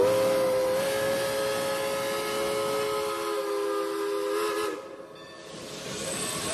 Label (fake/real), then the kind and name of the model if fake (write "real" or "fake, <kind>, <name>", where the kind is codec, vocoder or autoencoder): real